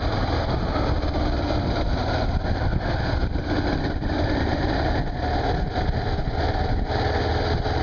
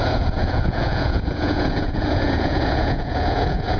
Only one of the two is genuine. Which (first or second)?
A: first